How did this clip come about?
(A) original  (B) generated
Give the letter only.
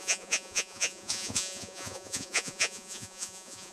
B